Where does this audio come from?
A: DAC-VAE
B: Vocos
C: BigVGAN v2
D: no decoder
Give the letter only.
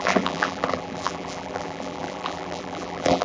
C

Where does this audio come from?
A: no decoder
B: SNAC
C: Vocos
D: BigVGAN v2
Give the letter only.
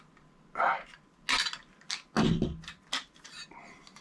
A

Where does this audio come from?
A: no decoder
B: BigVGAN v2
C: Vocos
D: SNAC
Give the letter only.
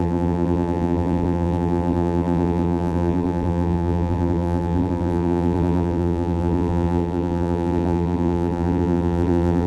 B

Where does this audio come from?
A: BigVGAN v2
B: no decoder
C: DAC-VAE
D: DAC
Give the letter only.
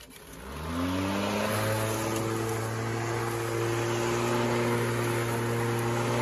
B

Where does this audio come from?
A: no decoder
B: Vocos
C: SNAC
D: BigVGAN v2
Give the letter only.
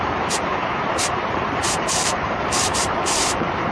D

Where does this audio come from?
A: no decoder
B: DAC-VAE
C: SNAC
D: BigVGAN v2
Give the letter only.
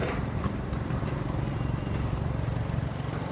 D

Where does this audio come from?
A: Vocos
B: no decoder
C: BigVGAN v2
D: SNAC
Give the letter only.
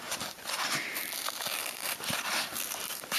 C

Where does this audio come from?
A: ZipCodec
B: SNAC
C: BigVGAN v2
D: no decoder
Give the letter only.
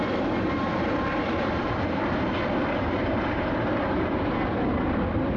C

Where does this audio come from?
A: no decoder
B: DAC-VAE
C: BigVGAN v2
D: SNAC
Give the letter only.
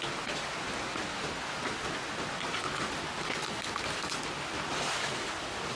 A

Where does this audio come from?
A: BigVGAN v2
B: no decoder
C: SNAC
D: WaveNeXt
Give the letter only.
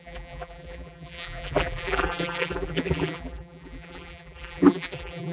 A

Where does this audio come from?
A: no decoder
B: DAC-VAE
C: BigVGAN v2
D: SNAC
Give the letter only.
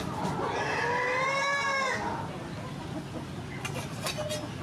A